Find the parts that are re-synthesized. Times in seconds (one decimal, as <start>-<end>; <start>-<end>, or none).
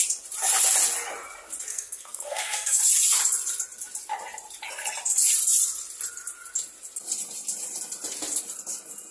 1.7-2.8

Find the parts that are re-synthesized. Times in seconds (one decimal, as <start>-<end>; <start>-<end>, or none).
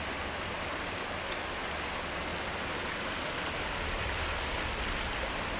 none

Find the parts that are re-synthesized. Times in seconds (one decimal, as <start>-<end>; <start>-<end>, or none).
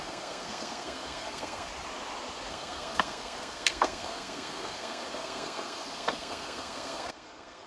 0.0-1.7; 2.5-7.7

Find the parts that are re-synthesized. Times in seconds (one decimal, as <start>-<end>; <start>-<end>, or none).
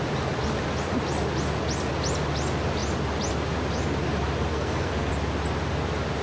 4.5-5.1